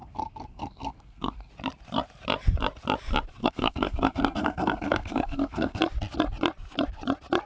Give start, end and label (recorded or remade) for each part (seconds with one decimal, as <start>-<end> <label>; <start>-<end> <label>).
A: 0.0-1.5 remade; 1.5-3.4 recorded; 3.4-5.8 remade; 5.8-7.5 recorded